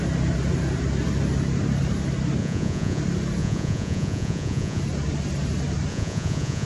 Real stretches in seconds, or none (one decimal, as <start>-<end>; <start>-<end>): 0.0-2.4; 3.0-3.4; 4.8-5.9